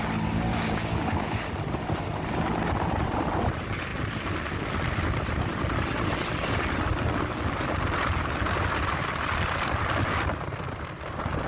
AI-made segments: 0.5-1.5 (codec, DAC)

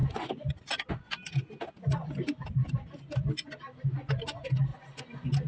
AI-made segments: none

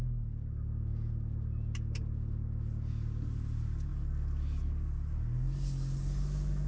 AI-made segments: none

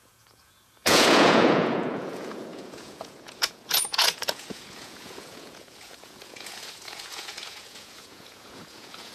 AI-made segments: 0.0-9.1 (vocoder, Vocos)

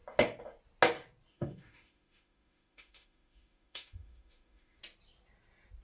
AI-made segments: 1.3-4.8 (autoencoder, DAC-VAE)

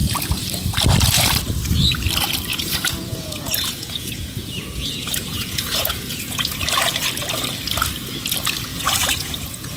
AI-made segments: 2.5-6.6 (vocoder, Vocos); 8.7-9.8

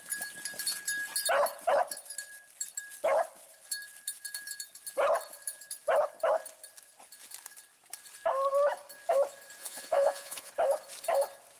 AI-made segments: 9.6-10.5 (vocoder, Vocos)